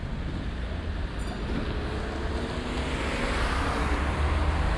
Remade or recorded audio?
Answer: recorded